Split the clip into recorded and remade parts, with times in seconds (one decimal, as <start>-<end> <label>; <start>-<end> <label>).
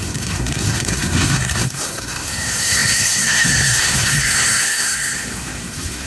0.0-6.1 remade